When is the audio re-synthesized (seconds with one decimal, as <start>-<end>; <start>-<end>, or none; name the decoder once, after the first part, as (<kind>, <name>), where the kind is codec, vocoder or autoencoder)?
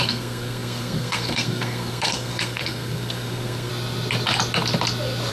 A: 0.0-3.7 (codec, SNAC)